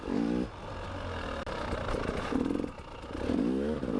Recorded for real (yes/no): yes